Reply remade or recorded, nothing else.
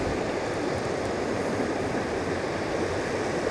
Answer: recorded